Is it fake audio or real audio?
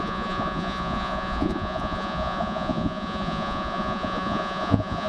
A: fake